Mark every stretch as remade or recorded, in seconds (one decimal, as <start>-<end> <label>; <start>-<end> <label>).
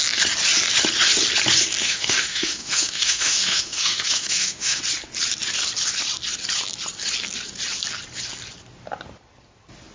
0.0-1.8 recorded; 1.8-4.8 remade; 4.8-9.9 recorded